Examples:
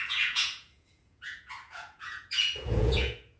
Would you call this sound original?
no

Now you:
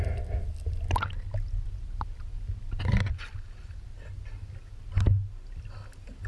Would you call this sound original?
yes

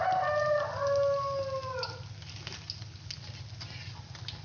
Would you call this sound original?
yes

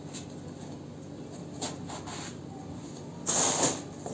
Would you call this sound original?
yes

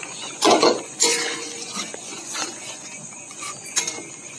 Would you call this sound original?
no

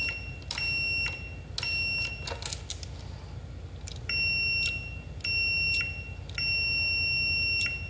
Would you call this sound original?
yes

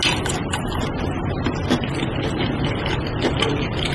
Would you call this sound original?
yes